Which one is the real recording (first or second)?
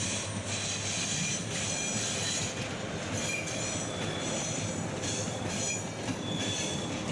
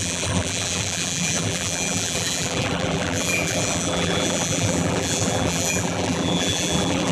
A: first